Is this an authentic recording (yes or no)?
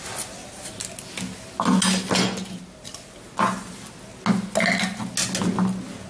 yes